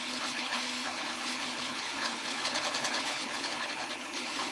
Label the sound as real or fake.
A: fake